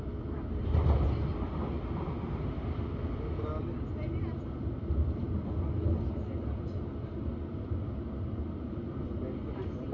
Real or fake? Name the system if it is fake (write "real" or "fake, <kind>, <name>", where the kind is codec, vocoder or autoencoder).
real